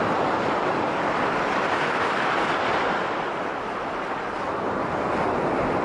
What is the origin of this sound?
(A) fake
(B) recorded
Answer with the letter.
B